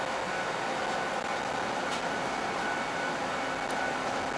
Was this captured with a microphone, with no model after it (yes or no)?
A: yes